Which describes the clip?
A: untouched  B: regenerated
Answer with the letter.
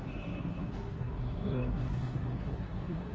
B